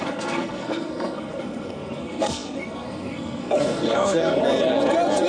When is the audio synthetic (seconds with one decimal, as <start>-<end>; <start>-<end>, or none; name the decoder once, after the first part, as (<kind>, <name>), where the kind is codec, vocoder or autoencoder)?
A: 0.0-4.4 (codec, SNAC)